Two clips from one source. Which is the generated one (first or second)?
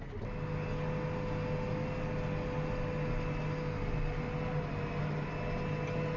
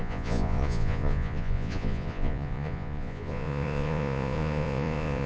second